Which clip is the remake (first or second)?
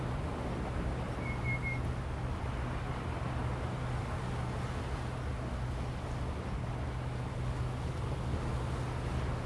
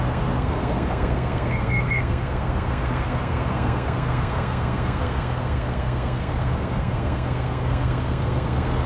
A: second